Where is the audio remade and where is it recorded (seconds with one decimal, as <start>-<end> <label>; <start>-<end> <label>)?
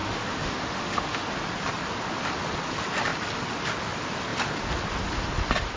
0.0-1.3 remade; 1.3-5.8 recorded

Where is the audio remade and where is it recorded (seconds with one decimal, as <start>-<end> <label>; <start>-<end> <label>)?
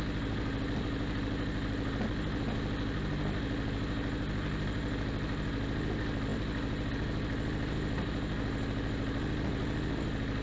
0.0-10.4 recorded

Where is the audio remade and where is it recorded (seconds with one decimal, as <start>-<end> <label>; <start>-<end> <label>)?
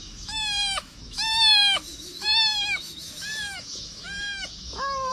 0.0-5.1 remade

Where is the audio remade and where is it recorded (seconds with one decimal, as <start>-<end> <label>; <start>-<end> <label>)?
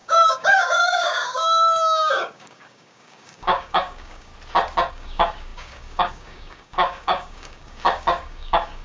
0.0-4.3 remade; 4.3-4.9 recorded; 4.9-8.8 remade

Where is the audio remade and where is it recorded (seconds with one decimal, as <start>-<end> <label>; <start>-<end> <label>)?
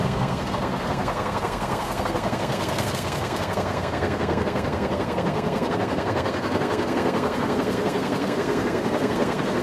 0.0-9.6 remade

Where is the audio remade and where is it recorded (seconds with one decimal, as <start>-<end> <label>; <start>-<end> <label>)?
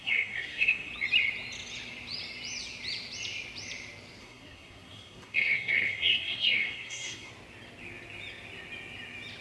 0.0-0.9 remade; 0.9-4.2 recorded; 4.2-7.3 remade; 7.3-9.4 recorded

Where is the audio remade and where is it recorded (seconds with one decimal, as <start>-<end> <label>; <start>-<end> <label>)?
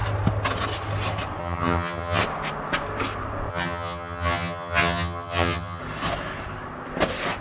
0.0-1.4 recorded; 1.4-2.2 remade; 2.2-3.5 recorded; 3.5-5.8 remade; 5.8-7.4 recorded